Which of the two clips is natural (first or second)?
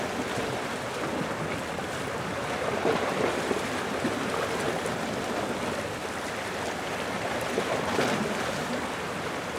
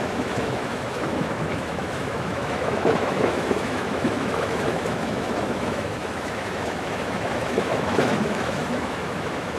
first